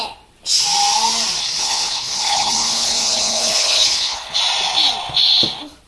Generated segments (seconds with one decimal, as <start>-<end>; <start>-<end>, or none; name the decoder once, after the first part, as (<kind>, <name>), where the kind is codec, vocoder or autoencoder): 1.4-4.4 (codec, HILCodec)